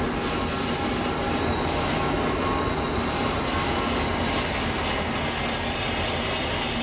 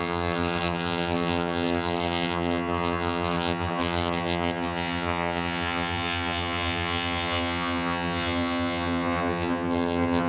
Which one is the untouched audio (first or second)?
first